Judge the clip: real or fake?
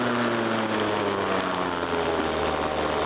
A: real